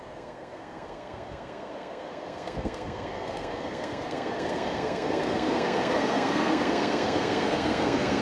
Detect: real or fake fake